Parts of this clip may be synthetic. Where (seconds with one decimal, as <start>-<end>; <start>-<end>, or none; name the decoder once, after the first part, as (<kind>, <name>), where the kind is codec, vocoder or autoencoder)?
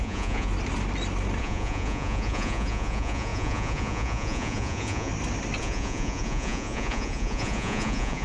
0.0-0.5 (vocoder, Vocos); 1.4-5.1; 5.6-8.2